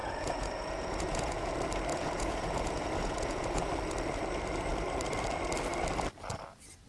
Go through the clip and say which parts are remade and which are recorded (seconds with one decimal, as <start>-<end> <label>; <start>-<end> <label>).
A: 0.0-1.5 remade; 1.5-1.9 recorded; 1.9-3.7 remade; 3.7-6.9 recorded